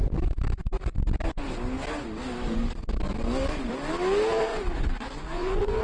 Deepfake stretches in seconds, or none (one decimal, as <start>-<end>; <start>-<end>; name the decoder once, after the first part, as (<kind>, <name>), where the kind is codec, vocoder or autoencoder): 4.5-5.8 (vocoder, Vocos)